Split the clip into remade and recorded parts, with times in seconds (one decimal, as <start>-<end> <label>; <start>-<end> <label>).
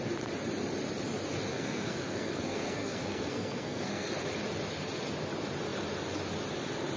0.0-1.5 recorded; 1.5-4.1 remade; 4.1-7.0 recorded